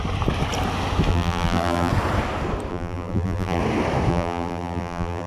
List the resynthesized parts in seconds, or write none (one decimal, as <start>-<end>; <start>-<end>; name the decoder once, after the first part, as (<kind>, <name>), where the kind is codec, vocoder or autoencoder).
1.1-1.9 (vocoder, BigVGAN v2); 2.7-3.6; 4.1-5.3